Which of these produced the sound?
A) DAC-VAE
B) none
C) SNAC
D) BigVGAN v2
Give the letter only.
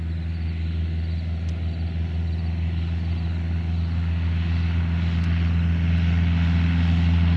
B